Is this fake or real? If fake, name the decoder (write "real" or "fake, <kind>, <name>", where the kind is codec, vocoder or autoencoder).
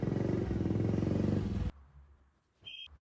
real